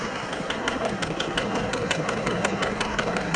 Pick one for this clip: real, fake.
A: fake